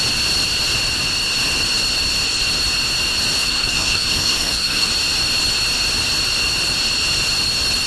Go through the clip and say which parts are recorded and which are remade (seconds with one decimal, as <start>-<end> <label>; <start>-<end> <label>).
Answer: 0.0-3.4 recorded; 3.4-4.9 remade; 4.9-7.9 recorded